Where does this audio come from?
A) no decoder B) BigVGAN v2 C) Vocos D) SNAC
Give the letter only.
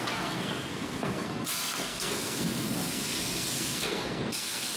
D